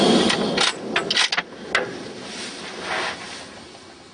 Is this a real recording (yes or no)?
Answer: yes